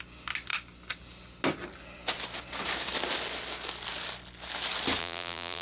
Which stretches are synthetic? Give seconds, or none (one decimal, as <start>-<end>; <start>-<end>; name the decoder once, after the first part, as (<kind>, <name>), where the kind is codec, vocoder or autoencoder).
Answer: 5.0-5.6 (vocoder, BigVGAN v2)

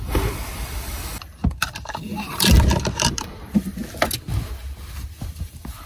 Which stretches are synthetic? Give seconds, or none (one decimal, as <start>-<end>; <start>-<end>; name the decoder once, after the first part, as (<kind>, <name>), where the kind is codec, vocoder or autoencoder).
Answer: 0.0-3.8 (vocoder, BigVGAN v2); 5.4-5.9

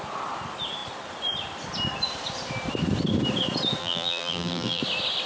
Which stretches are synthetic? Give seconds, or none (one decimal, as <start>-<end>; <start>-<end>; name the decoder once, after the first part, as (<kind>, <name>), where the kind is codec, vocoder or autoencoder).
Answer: 3.8-4.8 (vocoder, BigVGAN v2)

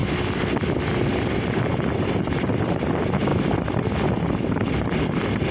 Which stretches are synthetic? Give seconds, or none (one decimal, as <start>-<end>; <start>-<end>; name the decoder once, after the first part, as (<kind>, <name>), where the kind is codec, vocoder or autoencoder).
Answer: 1.4-3.3 (vocoder, BigVGAN v2); 4.2-5.5

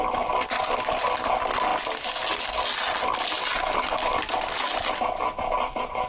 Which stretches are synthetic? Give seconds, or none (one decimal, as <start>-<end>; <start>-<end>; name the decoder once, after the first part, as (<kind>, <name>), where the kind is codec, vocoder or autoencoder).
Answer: none